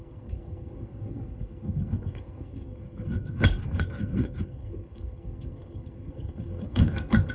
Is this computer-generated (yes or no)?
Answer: yes